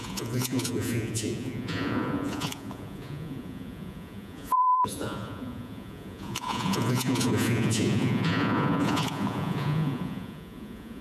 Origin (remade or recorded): remade